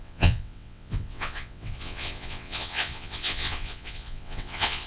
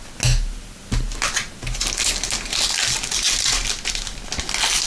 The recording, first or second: second